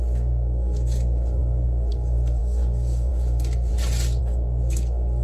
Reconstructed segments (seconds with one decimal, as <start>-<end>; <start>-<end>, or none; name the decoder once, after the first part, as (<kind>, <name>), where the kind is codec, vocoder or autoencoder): 0.0-3.7 (codec, SNAC); 4.2-5.2